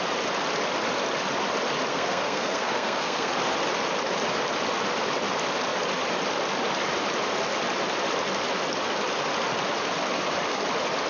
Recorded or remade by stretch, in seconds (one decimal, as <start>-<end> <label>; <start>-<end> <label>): 0.0-1.9 recorded; 1.9-3.3 remade; 3.3-11.1 recorded